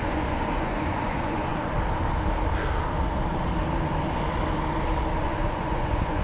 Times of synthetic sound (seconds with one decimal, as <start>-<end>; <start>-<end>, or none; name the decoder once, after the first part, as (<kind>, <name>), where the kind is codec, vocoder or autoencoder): 0.0-1.5 (vocoder, Vocos); 5.2-6.2

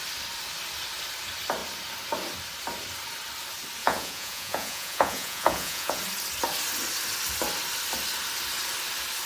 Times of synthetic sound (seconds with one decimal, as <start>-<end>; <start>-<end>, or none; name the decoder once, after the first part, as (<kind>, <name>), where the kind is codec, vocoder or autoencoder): 3.8-6.0 (vocoder, Vocos)

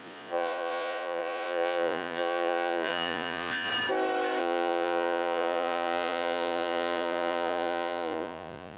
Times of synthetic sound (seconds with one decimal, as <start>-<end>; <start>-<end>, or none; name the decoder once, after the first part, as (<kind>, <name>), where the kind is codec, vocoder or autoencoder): 0.0-3.7 (vocoder, Vocos); 4.4-8.8

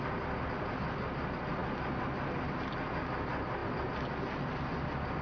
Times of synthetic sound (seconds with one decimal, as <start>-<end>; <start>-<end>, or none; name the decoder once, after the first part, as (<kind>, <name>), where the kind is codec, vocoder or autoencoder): none

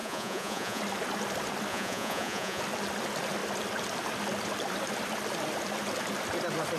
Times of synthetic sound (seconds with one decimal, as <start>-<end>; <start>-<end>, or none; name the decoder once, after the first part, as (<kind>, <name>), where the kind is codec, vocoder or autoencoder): 0.0-0.8 (vocoder, Vocos); 1.7-2.6

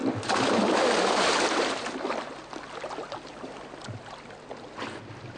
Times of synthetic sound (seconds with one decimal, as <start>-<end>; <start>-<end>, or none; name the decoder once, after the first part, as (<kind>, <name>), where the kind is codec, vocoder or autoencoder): none